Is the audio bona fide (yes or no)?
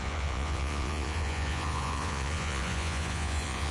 no